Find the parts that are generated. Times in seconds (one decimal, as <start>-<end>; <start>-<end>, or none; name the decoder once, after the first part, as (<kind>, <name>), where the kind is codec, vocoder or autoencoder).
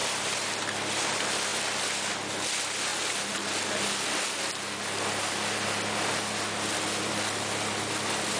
0.0-0.5 (vocoder, BigVGAN v2)